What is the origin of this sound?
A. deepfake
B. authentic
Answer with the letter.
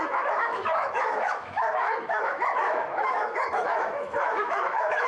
A